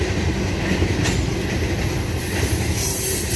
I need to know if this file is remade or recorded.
recorded